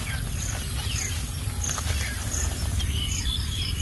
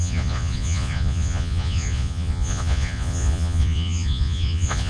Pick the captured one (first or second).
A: first